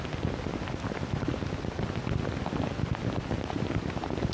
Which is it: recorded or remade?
recorded